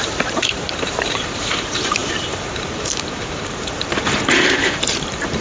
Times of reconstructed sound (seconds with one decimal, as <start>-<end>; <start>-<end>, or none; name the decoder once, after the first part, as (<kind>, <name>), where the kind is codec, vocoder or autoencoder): 0.0-5.4 (vocoder, BigVGAN v2)

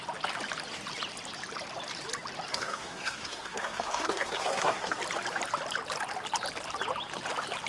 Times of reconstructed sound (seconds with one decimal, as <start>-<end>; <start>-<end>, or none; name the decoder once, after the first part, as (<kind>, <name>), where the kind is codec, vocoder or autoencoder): 2.5-5.0 (codec, SNAC)

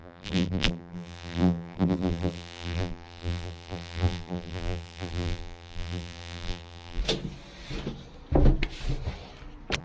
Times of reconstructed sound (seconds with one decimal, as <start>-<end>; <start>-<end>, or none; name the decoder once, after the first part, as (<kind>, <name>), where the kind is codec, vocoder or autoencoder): 0.0-7.0 (vocoder, BigVGAN v2)